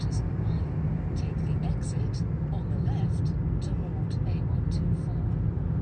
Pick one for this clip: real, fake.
real